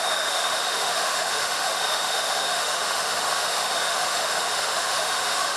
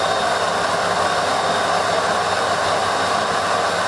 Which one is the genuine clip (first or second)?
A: second